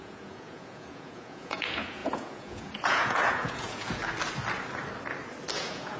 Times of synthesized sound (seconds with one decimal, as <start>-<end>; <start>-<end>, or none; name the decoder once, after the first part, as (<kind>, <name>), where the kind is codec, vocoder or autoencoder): 0.0-4.0 (vocoder, Vocos); 5.6-6.0